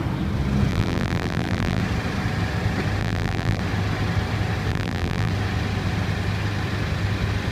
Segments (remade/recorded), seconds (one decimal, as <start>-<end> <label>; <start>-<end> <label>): 0.0-0.7 recorded; 0.7-1.8 remade; 1.8-3.0 recorded; 3.0-3.6 remade; 3.6-4.7 recorded; 4.7-5.3 remade; 5.3-7.5 recorded